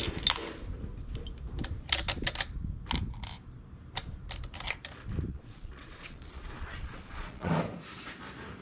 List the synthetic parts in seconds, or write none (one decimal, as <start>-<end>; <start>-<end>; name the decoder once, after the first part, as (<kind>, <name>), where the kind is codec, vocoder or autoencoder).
5.3-7.5 (vocoder, Vocos)